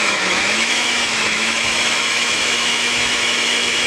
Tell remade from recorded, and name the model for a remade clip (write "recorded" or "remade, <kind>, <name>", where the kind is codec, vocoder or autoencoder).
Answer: remade, autoencoder, DAC-VAE